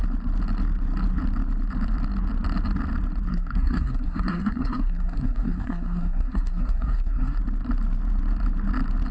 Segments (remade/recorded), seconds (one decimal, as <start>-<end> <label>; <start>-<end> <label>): 0.0-3.3 recorded; 3.3-7.4 remade; 7.4-9.1 recorded